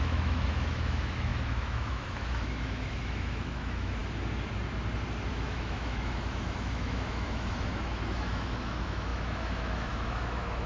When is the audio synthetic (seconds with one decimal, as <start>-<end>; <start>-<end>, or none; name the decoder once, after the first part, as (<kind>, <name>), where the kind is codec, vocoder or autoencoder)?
0.0-4.0 (autoencoder, DAC-VAE); 5.3-10.7